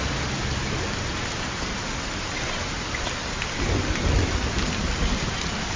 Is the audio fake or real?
real